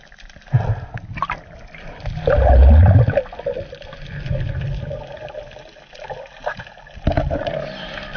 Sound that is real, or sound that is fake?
real